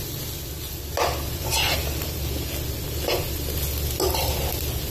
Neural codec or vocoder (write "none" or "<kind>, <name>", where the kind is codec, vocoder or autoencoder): none